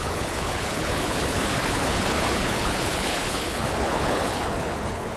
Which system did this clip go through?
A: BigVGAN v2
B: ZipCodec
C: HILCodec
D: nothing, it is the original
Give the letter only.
C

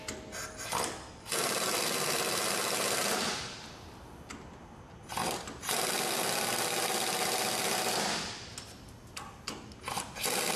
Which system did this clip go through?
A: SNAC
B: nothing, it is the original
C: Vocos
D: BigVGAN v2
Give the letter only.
B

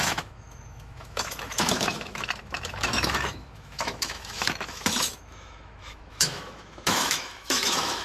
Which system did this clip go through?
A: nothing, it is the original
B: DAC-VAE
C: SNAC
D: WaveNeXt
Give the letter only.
B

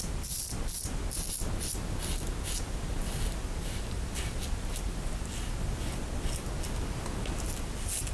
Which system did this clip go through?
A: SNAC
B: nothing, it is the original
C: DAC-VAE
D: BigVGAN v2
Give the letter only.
B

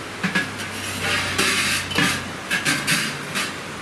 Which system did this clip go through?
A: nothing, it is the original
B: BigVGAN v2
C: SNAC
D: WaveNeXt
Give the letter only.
A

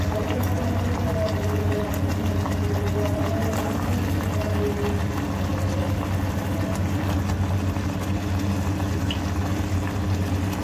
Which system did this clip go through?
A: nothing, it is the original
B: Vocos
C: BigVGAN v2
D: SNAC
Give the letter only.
A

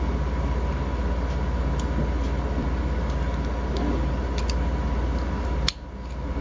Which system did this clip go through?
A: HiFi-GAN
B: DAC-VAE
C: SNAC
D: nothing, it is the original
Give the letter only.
D